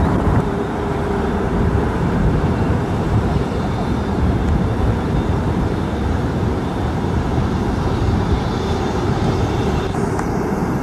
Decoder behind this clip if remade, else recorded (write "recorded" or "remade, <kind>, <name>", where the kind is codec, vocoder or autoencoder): remade, vocoder, BigVGAN v2